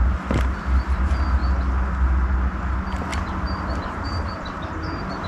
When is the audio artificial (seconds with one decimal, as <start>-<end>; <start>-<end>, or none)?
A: 3.1-5.3